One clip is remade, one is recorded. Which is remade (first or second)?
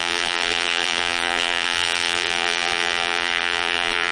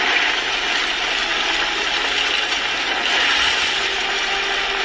first